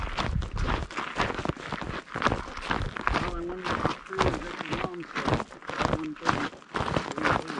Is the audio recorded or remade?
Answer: recorded